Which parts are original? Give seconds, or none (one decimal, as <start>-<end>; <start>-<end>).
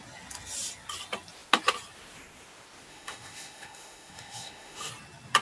0.0-2.9; 4.9-5.4